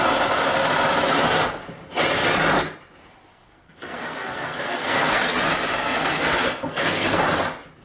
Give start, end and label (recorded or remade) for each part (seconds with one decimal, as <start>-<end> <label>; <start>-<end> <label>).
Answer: 0.0-3.3 recorded; 3.3-5.3 remade; 5.3-5.8 recorded; 5.8-7.2 remade; 7.2-7.8 recorded